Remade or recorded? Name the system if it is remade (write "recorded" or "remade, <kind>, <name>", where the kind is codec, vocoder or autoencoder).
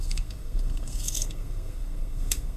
remade, codec, SNAC